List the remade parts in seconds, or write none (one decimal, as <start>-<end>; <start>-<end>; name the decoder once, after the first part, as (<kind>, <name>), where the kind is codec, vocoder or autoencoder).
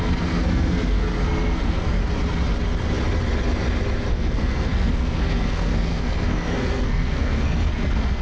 0.0-2.0 (codec, SNAC); 4.1-8.2